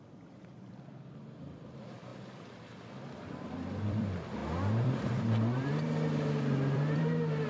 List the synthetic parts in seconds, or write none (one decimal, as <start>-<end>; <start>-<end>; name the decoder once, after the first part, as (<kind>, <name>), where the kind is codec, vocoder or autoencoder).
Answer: 0.0-7.5 (vocoder, BigVGAN v2)